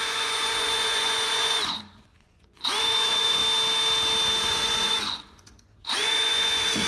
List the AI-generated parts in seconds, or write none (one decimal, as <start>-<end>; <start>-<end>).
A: 0.0-3.4; 4.4-6.9